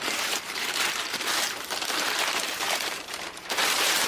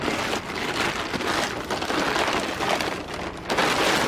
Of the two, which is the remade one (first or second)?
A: first